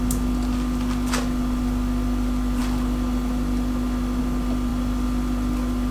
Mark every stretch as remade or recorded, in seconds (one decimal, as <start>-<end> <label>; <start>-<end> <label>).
0.0-5.9 recorded